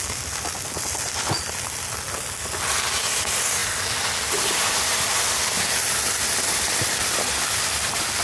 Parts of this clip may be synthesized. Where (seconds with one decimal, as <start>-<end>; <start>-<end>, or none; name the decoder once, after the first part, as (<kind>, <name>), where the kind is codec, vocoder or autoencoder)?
none